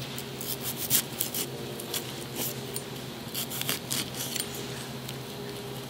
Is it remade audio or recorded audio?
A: recorded